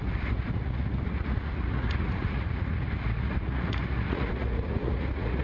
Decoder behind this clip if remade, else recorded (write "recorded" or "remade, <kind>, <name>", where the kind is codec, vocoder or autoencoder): remade, vocoder, Vocos